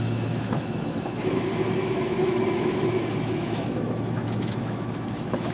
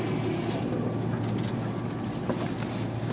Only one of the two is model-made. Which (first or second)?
first